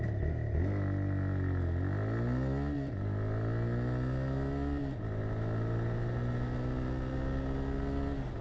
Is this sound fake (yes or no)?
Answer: no